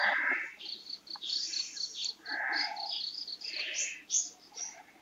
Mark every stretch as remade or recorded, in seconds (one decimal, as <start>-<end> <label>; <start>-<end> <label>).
0.0-5.0 recorded

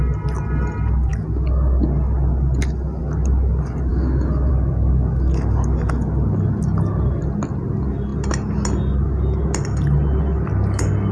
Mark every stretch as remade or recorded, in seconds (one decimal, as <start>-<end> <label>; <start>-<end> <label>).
0.0-11.1 recorded

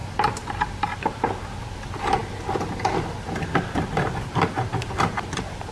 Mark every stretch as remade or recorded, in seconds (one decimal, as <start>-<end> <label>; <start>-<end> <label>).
0.0-5.7 recorded

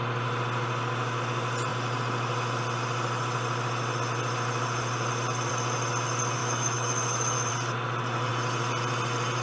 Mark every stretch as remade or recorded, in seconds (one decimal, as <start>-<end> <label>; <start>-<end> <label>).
0.0-6.4 recorded; 6.4-7.5 remade; 7.5-9.4 recorded

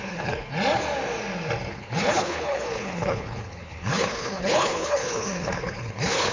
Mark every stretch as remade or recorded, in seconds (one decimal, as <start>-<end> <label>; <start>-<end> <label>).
0.0-0.5 remade; 0.5-1.7 recorded; 1.7-6.3 remade